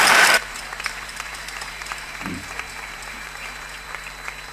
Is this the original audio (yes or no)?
no